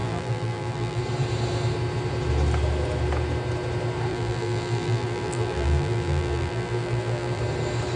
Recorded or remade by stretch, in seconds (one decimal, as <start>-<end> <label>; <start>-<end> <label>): 0.0-1.0 remade; 1.0-4.1 recorded; 4.1-7.4 remade; 7.4-8.0 recorded